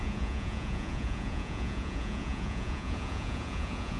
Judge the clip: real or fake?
fake